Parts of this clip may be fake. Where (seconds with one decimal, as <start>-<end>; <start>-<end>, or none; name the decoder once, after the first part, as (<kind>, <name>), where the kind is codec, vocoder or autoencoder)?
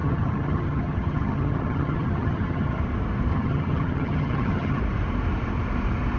0.0-2.8 (vocoder, HiFi-GAN); 3.3-4.8